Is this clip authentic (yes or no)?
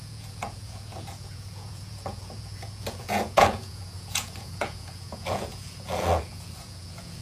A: no